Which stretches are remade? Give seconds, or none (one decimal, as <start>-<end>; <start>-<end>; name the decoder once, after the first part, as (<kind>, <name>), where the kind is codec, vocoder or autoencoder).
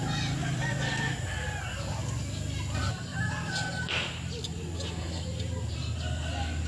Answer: 0.4-1.6 (vocoder, BigVGAN v2); 3.1-3.9